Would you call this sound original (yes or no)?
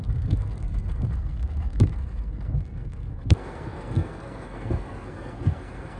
no